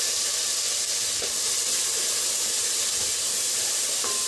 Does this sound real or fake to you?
real